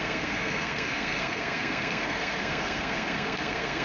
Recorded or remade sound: remade